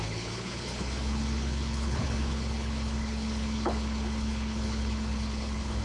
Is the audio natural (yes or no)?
no